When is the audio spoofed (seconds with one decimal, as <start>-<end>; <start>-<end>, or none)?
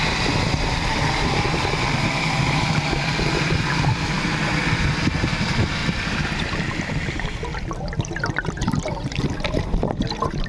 0.0-3.1; 5.8-10.5